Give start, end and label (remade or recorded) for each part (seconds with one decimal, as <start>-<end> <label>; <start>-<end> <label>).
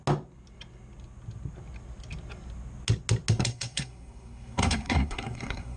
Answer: 0.0-3.3 recorded; 3.3-5.8 remade